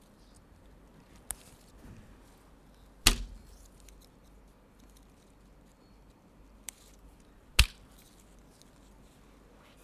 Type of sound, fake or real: real